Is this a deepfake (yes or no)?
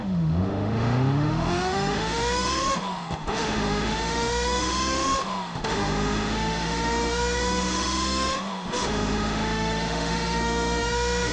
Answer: yes